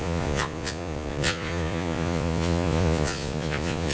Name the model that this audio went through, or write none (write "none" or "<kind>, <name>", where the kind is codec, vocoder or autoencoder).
vocoder, Vocos